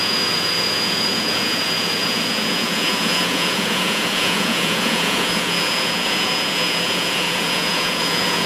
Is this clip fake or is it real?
fake